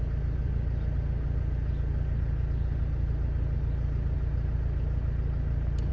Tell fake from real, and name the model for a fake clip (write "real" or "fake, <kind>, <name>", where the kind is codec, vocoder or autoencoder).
real